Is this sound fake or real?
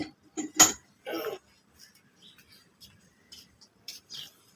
real